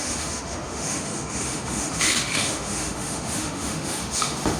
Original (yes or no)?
no